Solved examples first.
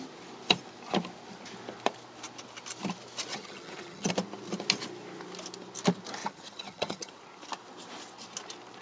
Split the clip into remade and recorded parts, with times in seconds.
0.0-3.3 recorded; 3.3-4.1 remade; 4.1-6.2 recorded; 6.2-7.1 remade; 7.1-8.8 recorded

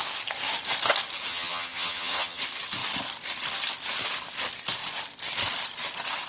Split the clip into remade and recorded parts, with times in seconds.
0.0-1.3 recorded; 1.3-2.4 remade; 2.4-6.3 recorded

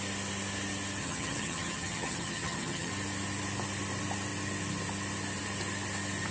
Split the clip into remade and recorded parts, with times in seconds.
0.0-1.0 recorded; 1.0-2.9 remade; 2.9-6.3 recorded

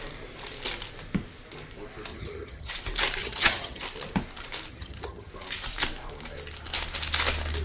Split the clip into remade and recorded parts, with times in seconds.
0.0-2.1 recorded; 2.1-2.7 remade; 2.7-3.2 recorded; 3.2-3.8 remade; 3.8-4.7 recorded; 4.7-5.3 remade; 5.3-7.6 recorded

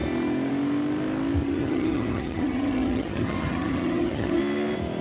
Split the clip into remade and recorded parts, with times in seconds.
0.0-1.4 recorded; 1.4-4.4 remade; 4.4-5.0 recorded